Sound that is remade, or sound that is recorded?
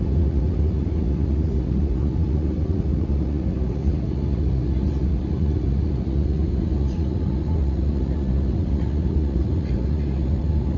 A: remade